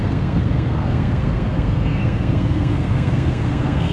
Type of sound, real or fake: fake